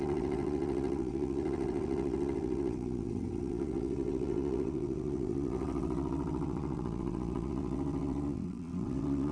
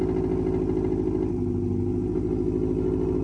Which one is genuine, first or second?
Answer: second